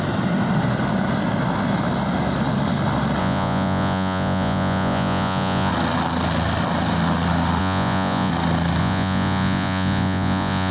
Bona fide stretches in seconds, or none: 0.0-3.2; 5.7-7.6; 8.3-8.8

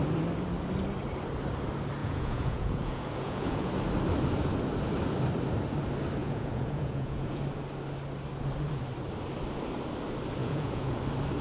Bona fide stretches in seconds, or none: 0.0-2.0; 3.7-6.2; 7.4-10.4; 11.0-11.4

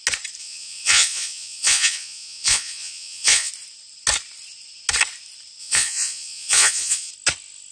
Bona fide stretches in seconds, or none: 0.0-0.4; 3.5-5.6; 7.1-7.7

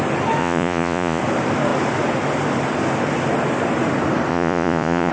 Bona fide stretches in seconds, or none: 0.0-0.4; 1.2-4.3

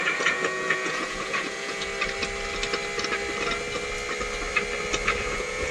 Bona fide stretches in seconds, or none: 1.9-5.2

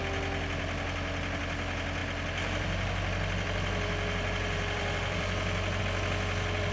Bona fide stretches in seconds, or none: 0.0-2.0; 5.8-6.7